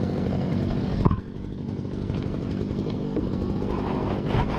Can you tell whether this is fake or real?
fake